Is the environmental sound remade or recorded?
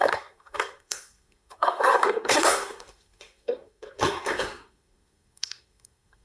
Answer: remade